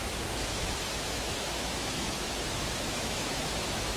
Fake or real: fake